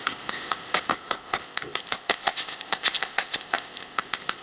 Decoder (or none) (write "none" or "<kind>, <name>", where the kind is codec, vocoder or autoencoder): codec, ZipCodec